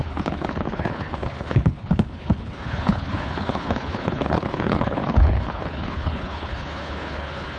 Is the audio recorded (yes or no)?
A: no